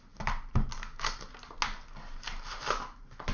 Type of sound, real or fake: real